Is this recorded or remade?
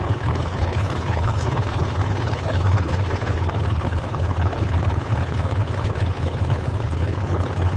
remade